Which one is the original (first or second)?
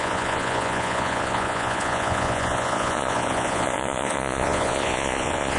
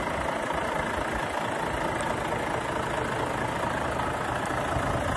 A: second